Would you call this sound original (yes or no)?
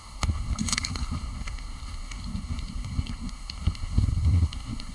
no